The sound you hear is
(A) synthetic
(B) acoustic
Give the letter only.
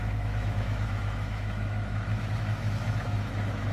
A